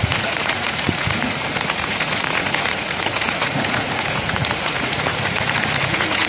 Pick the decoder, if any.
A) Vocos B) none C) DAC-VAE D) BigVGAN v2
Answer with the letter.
A